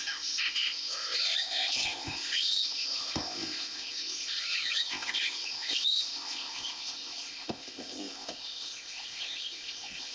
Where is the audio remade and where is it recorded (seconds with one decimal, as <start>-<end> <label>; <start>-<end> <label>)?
0.0-10.1 remade